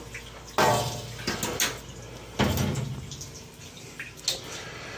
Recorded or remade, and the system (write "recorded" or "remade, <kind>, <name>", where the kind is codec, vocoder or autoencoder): recorded